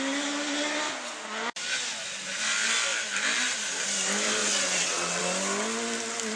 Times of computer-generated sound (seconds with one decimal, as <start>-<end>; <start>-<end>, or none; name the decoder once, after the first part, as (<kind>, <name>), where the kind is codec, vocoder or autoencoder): 4.4-5.2 (vocoder, WaveNeXt)